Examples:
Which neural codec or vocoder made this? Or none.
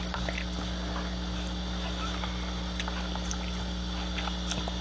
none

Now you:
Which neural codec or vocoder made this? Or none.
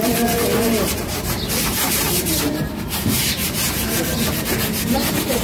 vocoder, BigVGAN v2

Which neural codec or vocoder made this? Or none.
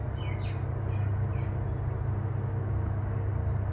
none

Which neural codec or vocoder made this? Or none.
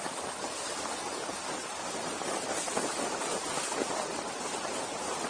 none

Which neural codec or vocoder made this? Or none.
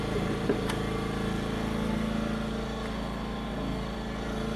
none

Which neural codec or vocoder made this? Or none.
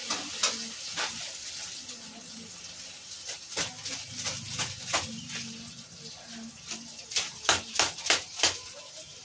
none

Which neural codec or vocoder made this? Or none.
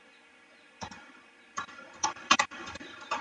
vocoder, BigVGAN v2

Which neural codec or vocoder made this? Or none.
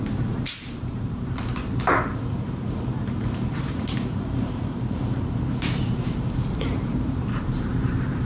vocoder, BigVGAN v2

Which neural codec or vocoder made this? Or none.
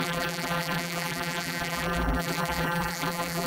vocoder, BigVGAN v2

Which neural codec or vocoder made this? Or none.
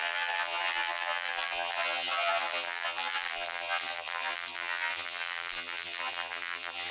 vocoder, BigVGAN v2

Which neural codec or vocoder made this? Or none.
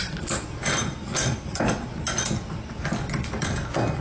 none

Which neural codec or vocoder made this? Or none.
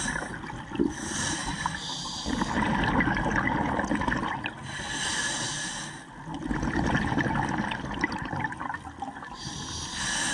none